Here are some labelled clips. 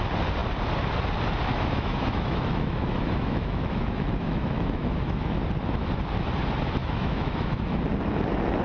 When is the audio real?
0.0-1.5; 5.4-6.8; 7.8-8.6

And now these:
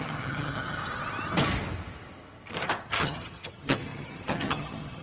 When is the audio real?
0.8-2.9